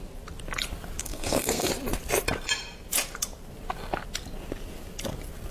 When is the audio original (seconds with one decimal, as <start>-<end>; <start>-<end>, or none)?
0.0-1.0; 1.7-5.5